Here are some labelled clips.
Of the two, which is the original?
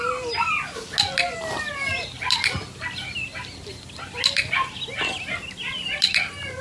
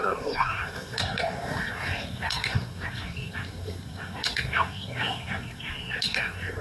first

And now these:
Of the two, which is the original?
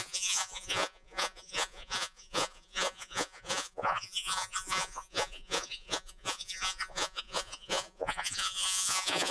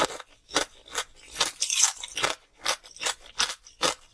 second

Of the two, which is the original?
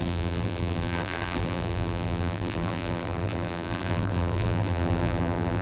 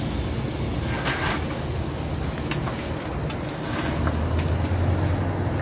second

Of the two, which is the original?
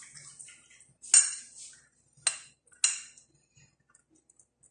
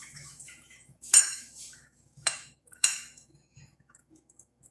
first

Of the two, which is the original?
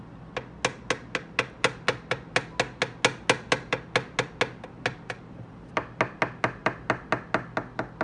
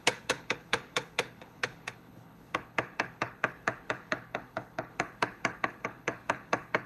first